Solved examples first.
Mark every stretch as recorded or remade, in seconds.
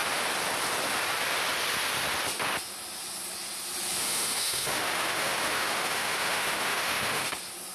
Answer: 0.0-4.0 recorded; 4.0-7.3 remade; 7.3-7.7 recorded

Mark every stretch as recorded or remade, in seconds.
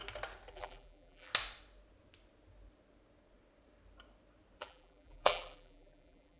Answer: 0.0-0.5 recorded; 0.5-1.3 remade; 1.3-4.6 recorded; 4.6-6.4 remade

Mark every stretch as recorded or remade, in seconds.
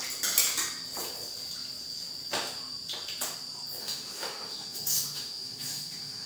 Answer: 0.0-3.8 recorded; 3.8-6.3 remade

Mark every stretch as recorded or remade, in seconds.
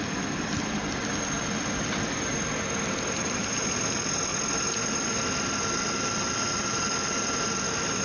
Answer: 0.0-8.0 recorded